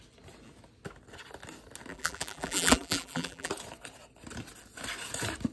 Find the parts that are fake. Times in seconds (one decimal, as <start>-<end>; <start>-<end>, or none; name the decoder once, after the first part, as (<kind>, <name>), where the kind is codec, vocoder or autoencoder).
1.9-3.5 (vocoder, BigVGAN v2)